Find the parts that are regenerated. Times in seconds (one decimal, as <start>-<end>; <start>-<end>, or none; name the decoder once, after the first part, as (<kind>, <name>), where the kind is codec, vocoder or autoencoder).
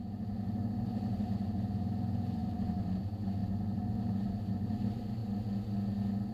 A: 0.0-5.2 (vocoder, BigVGAN v2)